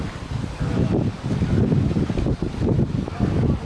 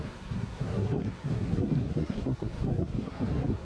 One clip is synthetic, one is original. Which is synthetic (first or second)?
second